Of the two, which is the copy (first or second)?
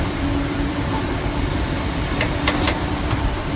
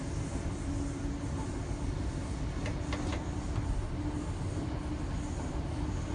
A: first